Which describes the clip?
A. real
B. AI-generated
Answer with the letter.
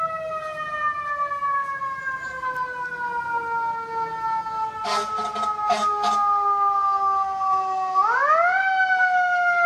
A